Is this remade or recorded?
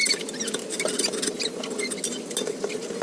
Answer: recorded